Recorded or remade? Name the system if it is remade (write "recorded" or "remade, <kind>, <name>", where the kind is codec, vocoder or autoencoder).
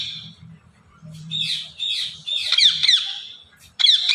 remade, vocoder, BigVGAN v2